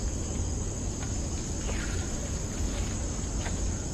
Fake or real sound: real